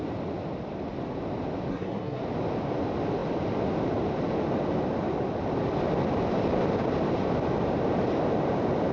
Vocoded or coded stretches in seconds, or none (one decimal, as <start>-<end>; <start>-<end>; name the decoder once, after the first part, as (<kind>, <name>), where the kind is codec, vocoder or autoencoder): 1.7-2.2 (codec, SNAC)